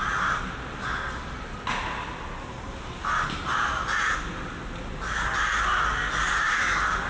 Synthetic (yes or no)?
no